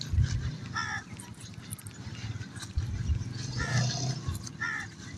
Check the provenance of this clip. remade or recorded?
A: recorded